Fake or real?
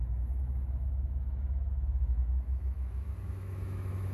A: fake